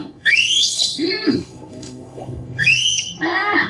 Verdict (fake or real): fake